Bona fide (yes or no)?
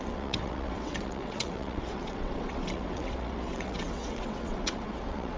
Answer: no